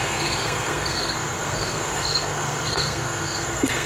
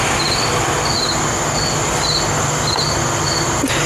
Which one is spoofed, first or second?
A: first